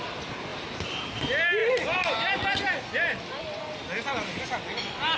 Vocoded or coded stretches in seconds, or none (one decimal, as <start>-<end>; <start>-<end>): none